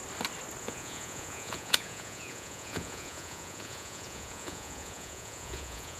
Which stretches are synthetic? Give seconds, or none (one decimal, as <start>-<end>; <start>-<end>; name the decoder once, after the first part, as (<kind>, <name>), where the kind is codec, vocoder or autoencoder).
0.6-6.0 (vocoder, Vocos)